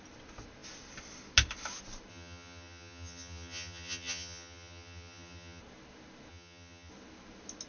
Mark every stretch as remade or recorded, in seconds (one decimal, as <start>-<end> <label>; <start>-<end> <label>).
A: 0.0-2.1 recorded; 2.1-5.6 remade; 5.6-6.3 recorded; 6.3-6.9 remade; 6.9-7.7 recorded